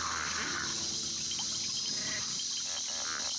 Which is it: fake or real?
real